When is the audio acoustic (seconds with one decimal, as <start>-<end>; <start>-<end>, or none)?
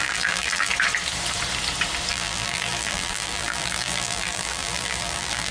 0.7-2.1